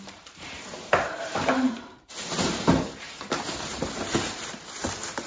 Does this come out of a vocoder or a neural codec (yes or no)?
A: yes